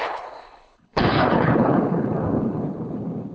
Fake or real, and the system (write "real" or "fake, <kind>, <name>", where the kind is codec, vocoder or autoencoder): fake, codec, HILCodec